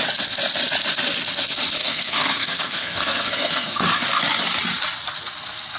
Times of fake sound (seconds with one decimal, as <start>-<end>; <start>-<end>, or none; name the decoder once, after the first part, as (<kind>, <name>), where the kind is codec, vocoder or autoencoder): 1.8-3.8 (codec, SNAC)